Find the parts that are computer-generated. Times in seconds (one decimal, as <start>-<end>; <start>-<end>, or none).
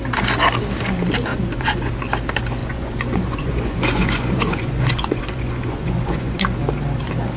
1.3-1.9; 2.6-6.4